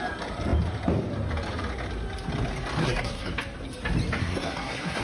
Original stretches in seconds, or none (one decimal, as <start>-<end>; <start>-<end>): 0.0-2.8; 3.3-4.2